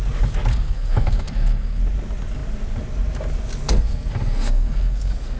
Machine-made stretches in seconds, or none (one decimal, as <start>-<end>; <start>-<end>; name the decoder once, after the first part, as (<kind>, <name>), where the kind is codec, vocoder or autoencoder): 0.5-1.8 (codec, SNAC); 3.7-5.4

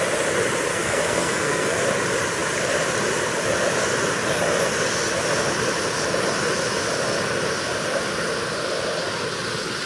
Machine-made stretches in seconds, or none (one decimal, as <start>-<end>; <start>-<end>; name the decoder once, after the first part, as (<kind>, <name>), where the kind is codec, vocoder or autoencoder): 0.7-1.8 (codec, SNAC)

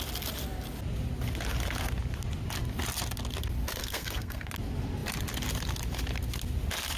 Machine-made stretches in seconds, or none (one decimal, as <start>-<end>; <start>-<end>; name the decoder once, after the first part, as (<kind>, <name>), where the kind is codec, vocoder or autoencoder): 3.8-4.5 (codec, SNAC)

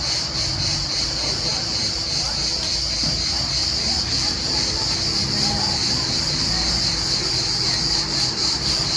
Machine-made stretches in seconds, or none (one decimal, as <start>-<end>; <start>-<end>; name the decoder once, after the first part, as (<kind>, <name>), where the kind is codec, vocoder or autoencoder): none

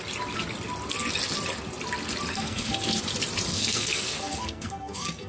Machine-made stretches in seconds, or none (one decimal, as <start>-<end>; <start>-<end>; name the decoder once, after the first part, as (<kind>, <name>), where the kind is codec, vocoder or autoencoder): 2.3-3.0 (codec, SNAC); 3.5-5.3

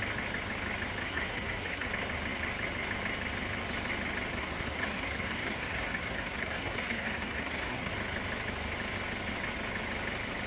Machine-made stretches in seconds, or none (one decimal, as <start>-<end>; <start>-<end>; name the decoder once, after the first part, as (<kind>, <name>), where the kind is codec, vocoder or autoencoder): 1.0-1.9 (codec, SNAC); 4.4-7.9

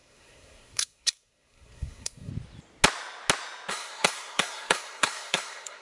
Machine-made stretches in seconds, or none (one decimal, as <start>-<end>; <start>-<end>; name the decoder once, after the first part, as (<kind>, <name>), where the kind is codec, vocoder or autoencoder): 0.0-2.3 (codec, SNAC); 3.7-5.8